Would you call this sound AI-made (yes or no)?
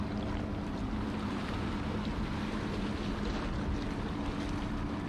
no